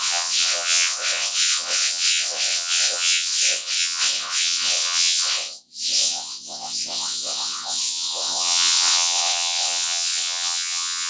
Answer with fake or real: fake